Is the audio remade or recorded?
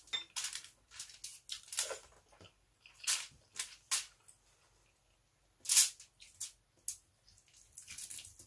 recorded